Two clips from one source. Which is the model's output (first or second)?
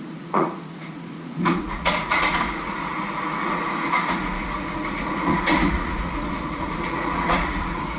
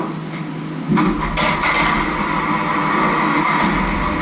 first